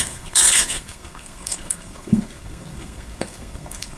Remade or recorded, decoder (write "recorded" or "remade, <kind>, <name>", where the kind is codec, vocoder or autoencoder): remade, codec, SNAC